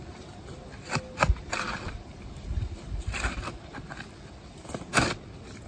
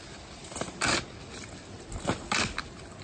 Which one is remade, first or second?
first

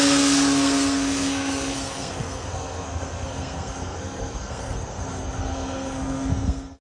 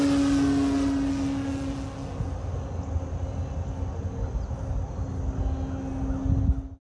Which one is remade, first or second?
first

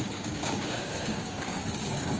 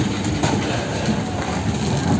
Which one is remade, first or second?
first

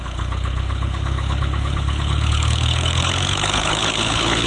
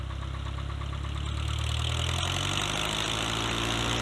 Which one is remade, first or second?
first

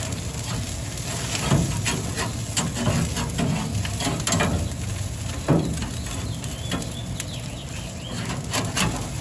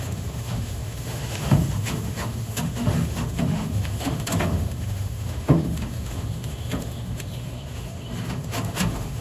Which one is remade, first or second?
second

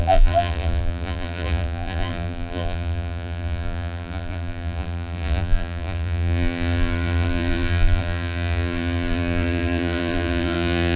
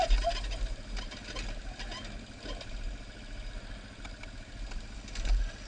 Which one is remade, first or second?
first